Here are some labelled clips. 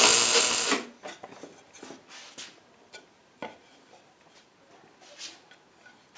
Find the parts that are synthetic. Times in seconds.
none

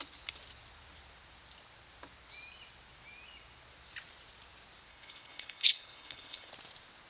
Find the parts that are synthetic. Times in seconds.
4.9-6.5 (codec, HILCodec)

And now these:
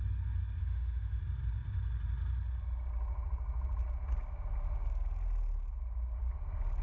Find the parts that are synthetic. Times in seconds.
0.6-1.2 (autoencoder, DAC-VAE)